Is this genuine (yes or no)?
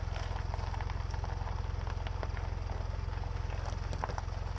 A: yes